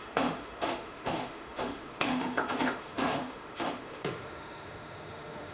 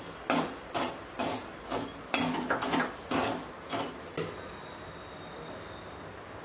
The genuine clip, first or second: second